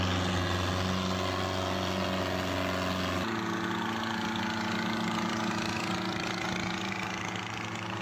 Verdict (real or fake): real